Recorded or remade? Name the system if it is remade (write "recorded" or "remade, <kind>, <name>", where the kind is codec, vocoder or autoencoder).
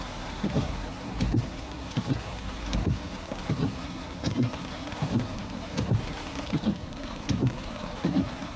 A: remade, codec, SNAC